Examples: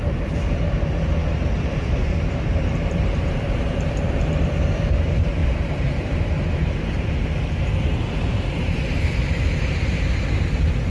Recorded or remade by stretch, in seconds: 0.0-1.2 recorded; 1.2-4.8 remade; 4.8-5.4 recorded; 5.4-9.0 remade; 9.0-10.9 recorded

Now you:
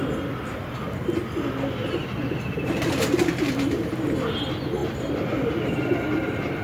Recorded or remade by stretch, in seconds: 0.0-4.8 recorded; 4.8-6.6 remade

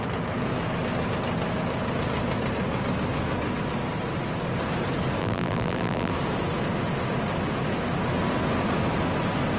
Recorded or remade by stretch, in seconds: 0.0-5.2 recorded; 5.2-6.1 remade; 6.1-9.6 recorded